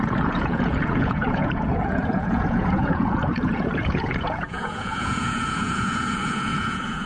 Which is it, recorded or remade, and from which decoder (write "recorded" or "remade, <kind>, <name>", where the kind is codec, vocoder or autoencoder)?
remade, vocoder, Vocos